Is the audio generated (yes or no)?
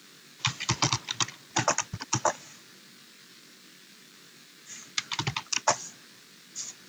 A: no